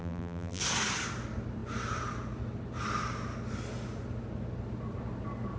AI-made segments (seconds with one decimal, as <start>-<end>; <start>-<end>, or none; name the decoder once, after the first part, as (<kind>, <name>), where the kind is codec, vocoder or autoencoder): 0.0-0.6 (vocoder, BigVGAN v2)